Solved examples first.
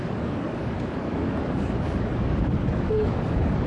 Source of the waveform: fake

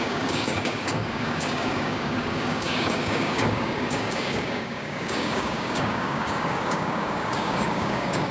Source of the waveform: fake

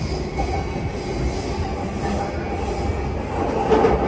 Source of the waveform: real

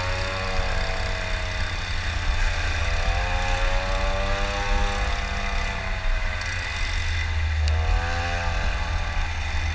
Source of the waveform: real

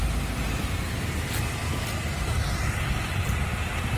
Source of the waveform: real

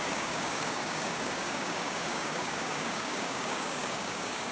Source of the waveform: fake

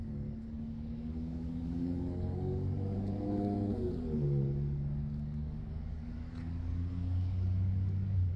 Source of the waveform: fake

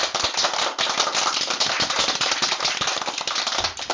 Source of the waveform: real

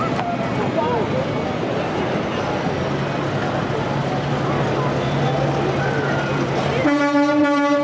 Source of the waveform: real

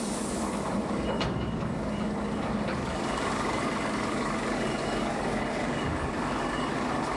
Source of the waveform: fake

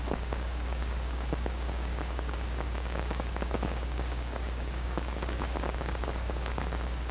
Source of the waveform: fake